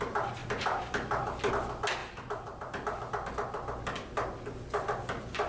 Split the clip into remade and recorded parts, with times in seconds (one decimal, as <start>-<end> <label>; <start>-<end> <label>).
0.0-0.4 recorded; 0.4-1.5 remade; 1.5-2.0 recorded; 2.0-3.1 remade; 3.1-5.5 recorded